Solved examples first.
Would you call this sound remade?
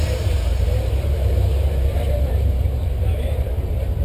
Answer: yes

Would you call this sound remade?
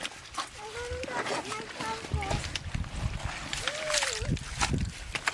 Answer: no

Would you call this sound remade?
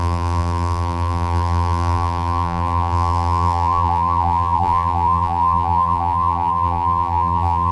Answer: yes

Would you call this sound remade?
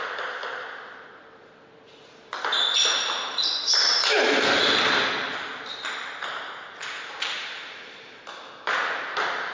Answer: no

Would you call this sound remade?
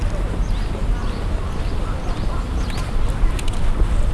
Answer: no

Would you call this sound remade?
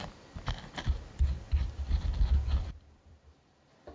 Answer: no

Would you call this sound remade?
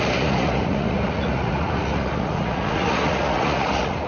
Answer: yes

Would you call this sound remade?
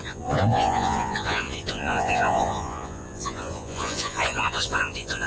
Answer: yes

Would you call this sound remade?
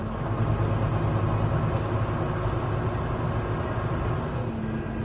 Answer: no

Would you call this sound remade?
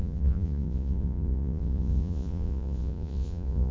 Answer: yes